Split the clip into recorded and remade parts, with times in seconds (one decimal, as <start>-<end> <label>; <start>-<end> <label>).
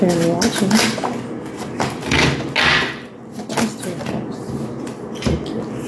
0.0-5.9 recorded